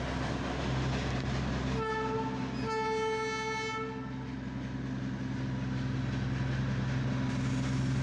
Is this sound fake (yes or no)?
no